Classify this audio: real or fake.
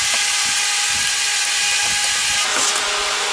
real